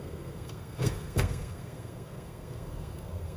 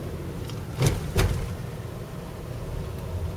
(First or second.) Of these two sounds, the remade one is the first